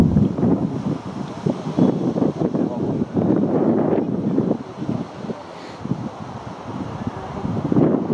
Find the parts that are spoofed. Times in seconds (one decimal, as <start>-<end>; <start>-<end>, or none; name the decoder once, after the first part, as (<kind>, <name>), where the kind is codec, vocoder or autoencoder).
0.0-0.6 (vocoder, BigVGAN v2); 2.1-4.7; 7.6-8.1